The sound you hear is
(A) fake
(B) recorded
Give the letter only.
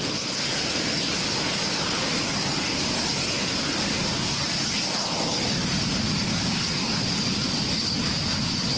B